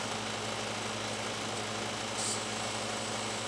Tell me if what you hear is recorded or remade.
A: recorded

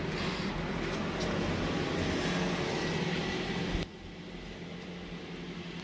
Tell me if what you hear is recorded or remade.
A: recorded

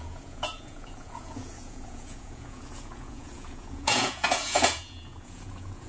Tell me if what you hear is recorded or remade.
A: remade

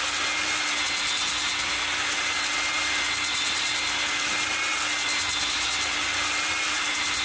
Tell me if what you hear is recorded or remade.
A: recorded